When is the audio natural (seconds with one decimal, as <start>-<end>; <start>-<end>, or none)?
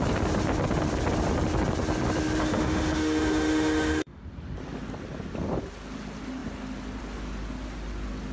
0.0-2.4; 4.2-8.3